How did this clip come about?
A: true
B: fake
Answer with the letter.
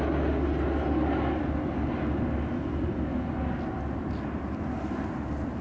A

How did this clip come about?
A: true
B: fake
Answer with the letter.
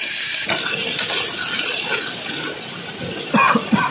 A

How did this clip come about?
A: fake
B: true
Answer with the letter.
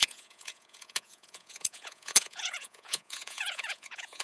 A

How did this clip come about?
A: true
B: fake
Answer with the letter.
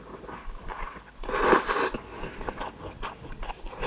A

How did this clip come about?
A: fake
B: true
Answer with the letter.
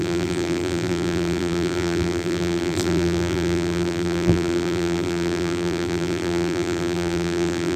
A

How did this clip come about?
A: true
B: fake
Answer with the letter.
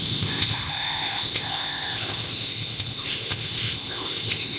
B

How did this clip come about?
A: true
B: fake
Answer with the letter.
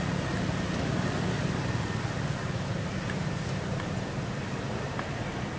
A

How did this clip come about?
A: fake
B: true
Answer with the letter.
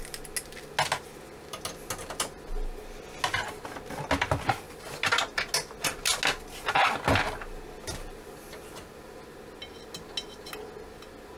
B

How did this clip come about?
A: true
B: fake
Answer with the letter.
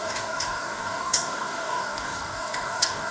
B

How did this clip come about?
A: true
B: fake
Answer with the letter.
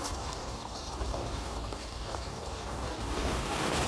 B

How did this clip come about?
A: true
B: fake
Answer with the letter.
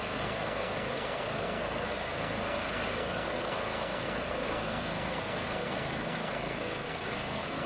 B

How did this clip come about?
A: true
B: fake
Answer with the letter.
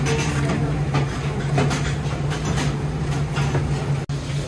A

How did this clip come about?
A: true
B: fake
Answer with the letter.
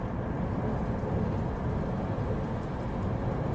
A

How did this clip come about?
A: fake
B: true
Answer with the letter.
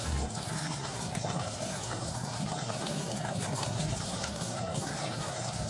A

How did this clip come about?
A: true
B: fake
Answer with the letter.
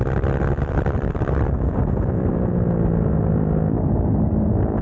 A